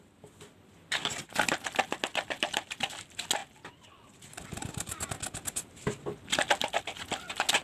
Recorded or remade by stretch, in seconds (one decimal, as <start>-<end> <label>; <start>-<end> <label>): 0.0-2.1 recorded; 2.1-3.0 remade; 3.0-7.6 recorded

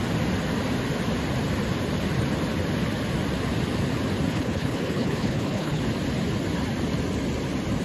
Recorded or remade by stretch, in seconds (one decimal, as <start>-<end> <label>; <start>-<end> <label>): 0.0-4.3 recorded; 4.3-5.8 remade; 5.8-7.8 recorded